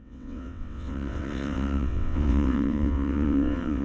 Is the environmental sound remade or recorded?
remade